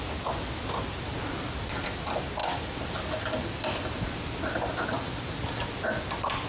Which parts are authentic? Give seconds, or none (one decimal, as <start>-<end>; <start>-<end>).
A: 0.0-6.5